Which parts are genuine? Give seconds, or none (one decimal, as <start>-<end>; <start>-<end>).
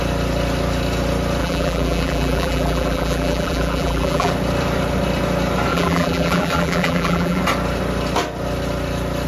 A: 0.0-1.4; 4.3-5.7; 7.4-9.3